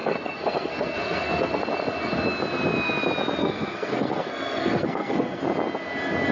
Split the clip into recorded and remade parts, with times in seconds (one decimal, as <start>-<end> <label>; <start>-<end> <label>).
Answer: 0.0-1.6 remade; 1.6-3.4 recorded; 3.4-5.4 remade; 5.4-6.3 recorded